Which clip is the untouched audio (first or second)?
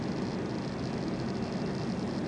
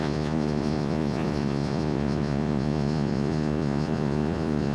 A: first